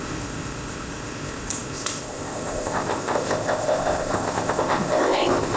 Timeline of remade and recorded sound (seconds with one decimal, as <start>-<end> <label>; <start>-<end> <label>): 0.0-5.6 remade